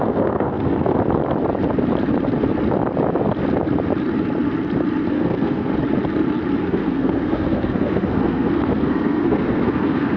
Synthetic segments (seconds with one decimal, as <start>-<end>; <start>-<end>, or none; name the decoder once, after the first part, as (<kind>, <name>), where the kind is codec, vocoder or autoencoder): 0.0-1.0 (codec, SNAC); 5.1-5.7; 6.6-10.2